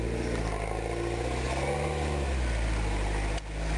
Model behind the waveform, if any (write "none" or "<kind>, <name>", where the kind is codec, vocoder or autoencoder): none